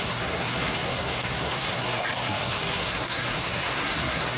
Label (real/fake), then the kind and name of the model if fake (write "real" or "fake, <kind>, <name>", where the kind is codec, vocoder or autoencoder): fake, codec, SNAC